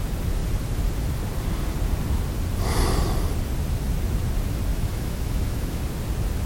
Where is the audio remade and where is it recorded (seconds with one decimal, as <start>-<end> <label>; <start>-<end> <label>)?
0.0-4.7 recorded; 4.7-5.8 remade; 5.8-6.5 recorded

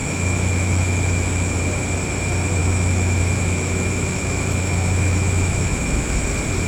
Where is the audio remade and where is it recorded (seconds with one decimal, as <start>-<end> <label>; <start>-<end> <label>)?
0.0-1.6 remade; 1.6-2.6 recorded; 2.6-6.3 remade; 6.3-6.7 recorded

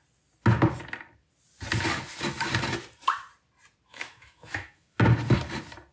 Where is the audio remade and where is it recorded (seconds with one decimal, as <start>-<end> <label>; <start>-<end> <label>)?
0.0-3.9 recorded; 3.9-5.0 remade; 5.0-5.9 recorded

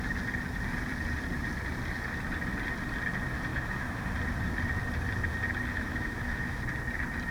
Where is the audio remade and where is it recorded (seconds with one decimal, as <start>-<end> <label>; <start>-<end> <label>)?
0.0-3.5 recorded; 3.5-4.1 remade; 4.1-5.7 recorded; 5.7-6.6 remade; 6.6-7.3 recorded